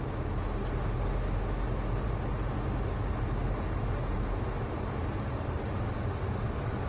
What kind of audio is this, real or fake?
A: real